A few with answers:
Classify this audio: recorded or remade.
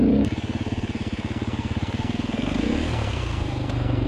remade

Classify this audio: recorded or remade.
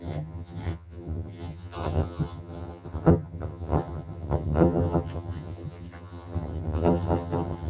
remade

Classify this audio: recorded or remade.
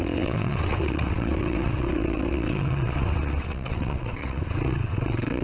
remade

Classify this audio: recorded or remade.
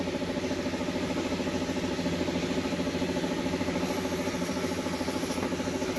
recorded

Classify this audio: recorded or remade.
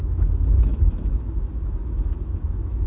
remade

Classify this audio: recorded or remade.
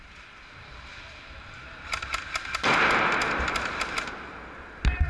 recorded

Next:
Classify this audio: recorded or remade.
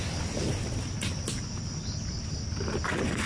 recorded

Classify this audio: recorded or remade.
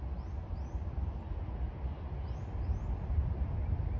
recorded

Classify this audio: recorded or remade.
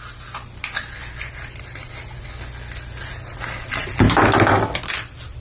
recorded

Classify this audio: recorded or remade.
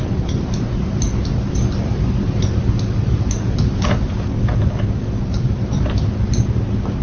recorded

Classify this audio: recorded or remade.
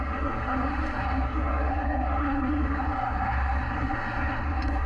remade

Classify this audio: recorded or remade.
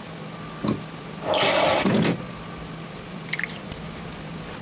recorded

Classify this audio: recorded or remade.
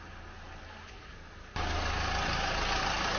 recorded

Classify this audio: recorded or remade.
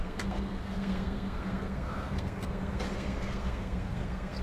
remade